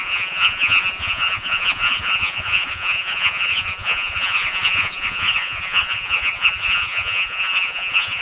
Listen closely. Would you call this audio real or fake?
fake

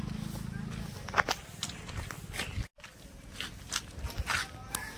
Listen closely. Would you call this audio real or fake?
real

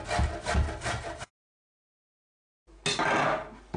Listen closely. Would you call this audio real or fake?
real